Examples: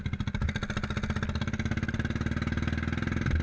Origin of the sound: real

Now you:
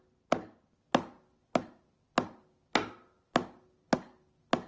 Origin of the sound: real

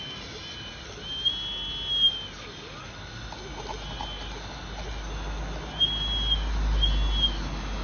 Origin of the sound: real